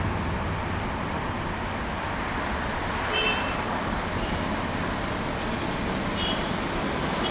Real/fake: real